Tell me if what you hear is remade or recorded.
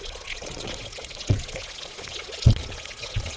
remade